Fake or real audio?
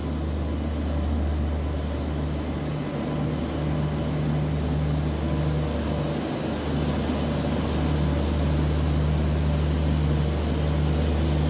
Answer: real